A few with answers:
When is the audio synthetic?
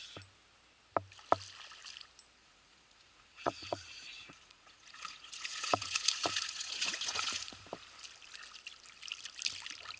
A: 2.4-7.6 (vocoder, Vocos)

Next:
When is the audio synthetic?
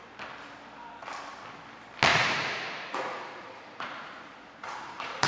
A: 2.1-5.3 (vocoder, Vocos)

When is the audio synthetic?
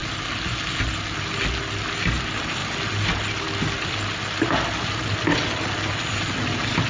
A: none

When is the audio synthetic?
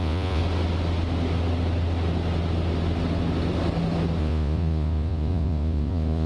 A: 0.0-0.4 (vocoder, Vocos); 4.2-6.3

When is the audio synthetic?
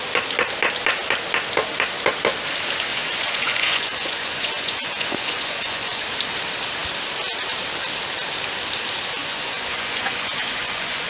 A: 2.9-6.0 (vocoder, Vocos); 9.2-11.1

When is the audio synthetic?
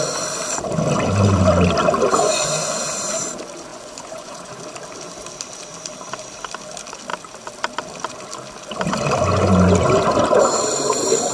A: 2.1-2.8 (vocoder, Vocos); 3.7-4.5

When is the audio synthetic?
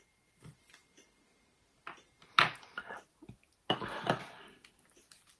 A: none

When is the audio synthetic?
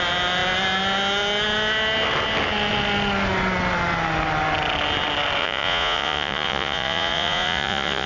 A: 5.4-8.1 (vocoder, Vocos)